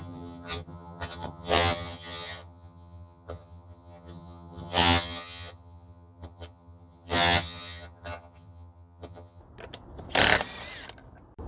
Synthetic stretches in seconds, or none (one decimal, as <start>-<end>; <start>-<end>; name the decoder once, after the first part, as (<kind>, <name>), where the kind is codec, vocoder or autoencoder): 0.0-9.4 (vocoder, HiFi-GAN)